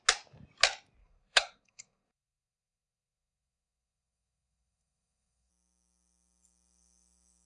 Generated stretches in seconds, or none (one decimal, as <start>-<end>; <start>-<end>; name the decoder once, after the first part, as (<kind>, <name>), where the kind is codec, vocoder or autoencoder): 1.0-5.5 (codec, SNAC)